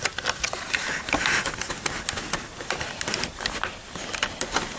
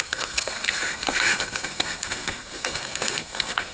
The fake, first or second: second